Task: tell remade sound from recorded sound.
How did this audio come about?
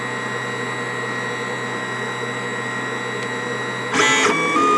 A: recorded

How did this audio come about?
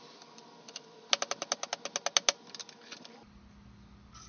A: recorded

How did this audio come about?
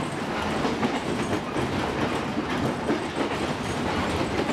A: recorded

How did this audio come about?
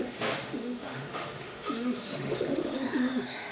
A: remade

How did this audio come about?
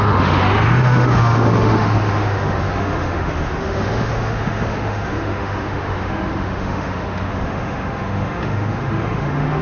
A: remade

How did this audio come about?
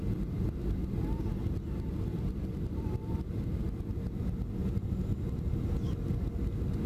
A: recorded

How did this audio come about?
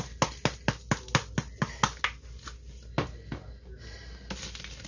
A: recorded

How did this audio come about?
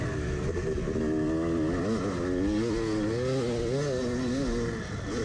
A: recorded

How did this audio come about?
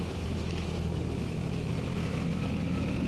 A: remade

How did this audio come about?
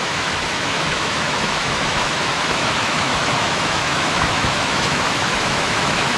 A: remade